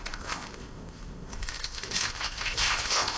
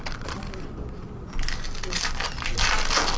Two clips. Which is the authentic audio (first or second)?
second